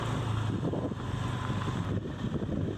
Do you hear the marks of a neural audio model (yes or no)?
no